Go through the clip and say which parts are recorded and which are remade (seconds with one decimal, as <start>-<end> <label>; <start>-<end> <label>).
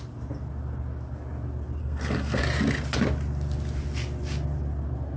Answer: 0.0-1.8 recorded; 1.8-2.4 remade; 2.4-5.2 recorded